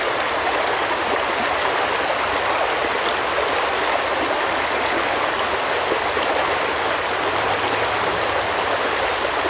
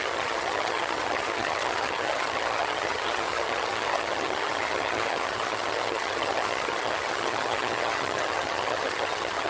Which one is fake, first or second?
second